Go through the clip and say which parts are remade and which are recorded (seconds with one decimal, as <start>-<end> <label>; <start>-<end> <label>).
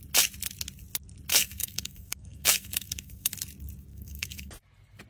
0.0-1.3 recorded; 1.3-3.3 remade; 3.3-3.9 recorded; 3.9-4.5 remade; 4.5-5.1 recorded